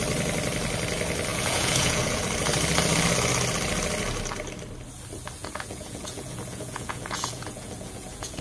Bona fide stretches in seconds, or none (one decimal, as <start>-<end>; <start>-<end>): 0.0-1.3; 2.2-5.4